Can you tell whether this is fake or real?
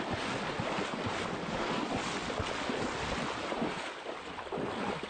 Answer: real